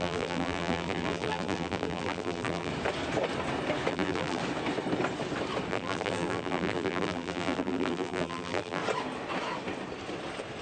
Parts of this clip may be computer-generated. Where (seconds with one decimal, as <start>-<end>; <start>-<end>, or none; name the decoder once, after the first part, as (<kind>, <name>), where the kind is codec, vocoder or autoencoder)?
0.0-2.7 (vocoder, BigVGAN v2); 3.9-4.4; 5.7-8.8